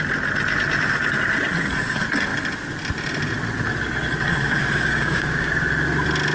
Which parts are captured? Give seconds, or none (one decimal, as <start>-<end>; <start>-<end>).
0.0-4.6; 5.5-6.3